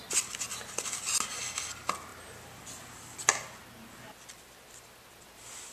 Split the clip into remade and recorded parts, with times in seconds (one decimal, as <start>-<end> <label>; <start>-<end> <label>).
0.0-5.7 recorded